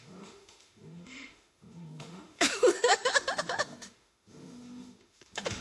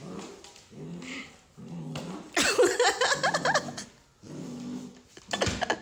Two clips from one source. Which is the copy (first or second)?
first